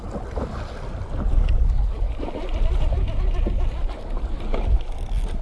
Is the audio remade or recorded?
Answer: recorded